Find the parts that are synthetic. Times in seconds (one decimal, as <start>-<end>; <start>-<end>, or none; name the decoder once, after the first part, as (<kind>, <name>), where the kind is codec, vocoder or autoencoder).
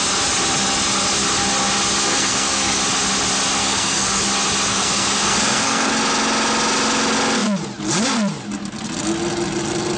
2.0-2.8 (codec, SNAC); 3.6-4.2; 4.7-5.9